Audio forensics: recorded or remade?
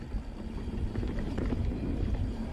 remade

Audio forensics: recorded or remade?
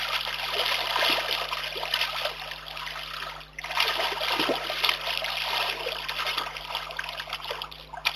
recorded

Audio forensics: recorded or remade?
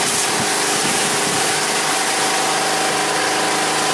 recorded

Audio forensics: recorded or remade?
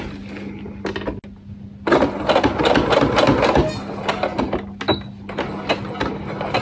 recorded